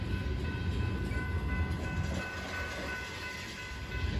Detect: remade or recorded recorded